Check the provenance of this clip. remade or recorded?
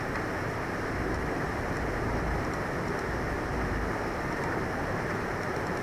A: remade